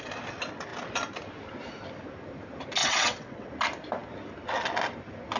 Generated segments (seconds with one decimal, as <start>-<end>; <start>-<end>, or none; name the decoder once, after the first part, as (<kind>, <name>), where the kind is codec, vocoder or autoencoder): 2.8-3.5 (vocoder, WaveNeXt)